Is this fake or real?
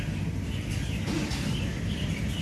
real